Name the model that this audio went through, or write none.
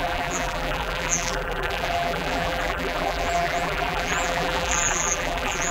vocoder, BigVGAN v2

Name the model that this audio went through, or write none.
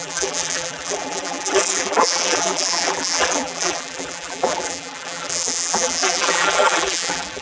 vocoder, BigVGAN v2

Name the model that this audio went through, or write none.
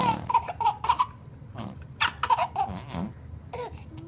none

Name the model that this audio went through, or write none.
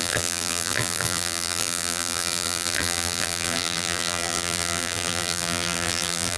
vocoder, BigVGAN v2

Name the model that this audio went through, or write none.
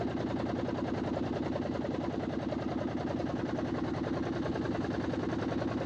none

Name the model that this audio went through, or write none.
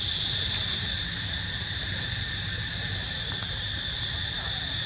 vocoder, BigVGAN v2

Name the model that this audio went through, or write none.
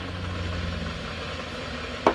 none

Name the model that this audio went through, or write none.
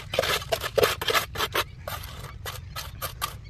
vocoder, BigVGAN v2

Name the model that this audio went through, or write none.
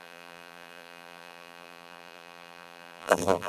vocoder, BigVGAN v2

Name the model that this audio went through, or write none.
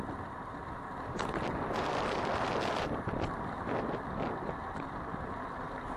none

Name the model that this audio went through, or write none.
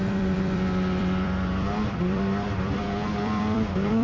vocoder, BigVGAN v2